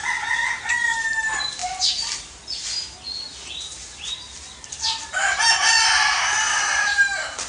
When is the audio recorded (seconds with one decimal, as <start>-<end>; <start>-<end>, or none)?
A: 0.0-7.5